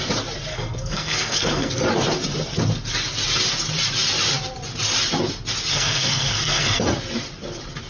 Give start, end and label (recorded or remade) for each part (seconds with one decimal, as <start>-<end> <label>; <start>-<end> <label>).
0.0-0.5 recorded; 0.5-1.7 remade; 1.7-5.7 recorded; 5.7-6.8 remade; 6.8-7.9 recorded